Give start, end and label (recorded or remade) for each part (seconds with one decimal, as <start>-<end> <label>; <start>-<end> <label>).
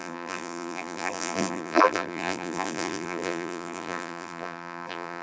0.0-5.2 remade